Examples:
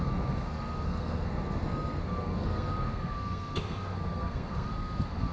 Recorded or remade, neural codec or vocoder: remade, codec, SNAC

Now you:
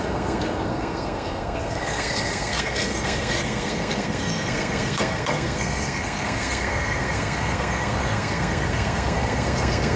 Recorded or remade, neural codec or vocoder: remade, codec, SNAC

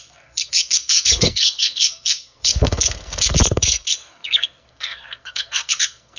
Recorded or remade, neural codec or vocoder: remade, codec, SNAC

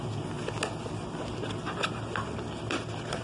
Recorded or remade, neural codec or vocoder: recorded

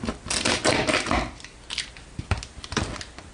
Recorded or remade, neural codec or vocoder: recorded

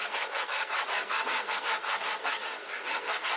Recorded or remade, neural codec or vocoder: remade, codec, SNAC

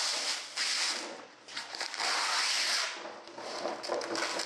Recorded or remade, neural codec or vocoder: recorded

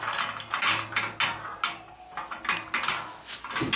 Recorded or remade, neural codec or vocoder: recorded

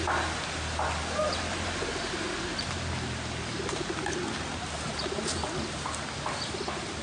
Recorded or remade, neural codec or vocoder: recorded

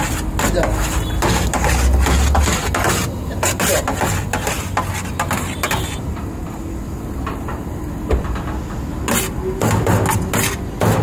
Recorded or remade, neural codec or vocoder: recorded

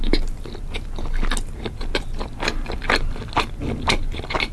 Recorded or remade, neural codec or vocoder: recorded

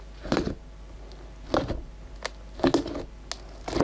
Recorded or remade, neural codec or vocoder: recorded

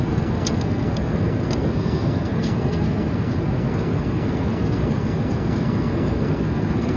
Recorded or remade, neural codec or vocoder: remade, codec, SNAC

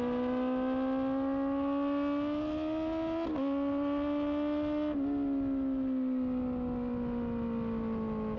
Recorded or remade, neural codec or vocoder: recorded